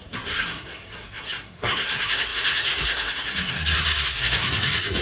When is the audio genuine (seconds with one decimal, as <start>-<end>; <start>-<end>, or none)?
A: none